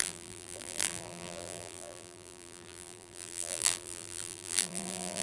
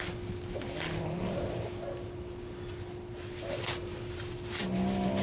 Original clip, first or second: second